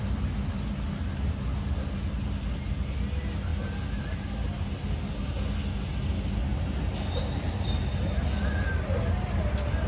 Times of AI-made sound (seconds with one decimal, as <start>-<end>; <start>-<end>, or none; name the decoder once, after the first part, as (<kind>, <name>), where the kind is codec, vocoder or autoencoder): none